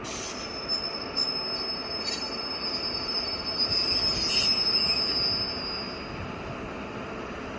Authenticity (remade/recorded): recorded